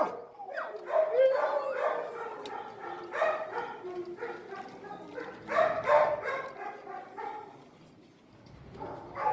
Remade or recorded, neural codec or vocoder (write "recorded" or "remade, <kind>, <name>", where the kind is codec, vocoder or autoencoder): recorded